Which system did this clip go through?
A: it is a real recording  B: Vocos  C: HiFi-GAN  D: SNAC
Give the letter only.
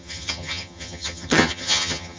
C